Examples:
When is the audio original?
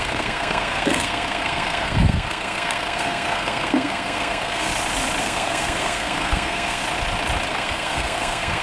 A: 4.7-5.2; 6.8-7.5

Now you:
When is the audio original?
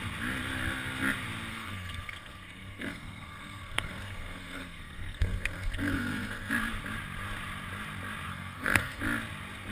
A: 0.0-1.5; 6.5-8.3; 9.0-9.7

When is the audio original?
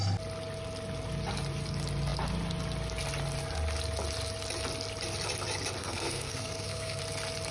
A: 0.0-5.8; 7.0-7.5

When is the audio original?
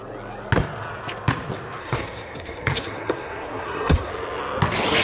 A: 0.0-1.8; 4.1-5.0